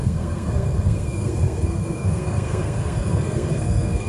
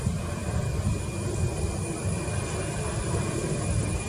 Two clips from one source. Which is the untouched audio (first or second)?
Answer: second